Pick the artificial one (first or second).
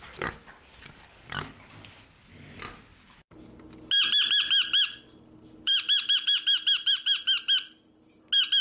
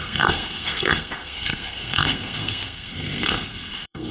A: second